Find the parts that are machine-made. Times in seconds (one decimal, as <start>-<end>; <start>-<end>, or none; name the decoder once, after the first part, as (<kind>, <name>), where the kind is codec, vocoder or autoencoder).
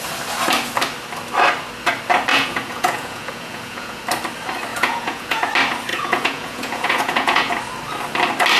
2.3-4.0 (vocoder, Vocos); 4.7-5.5; 5.9-7.5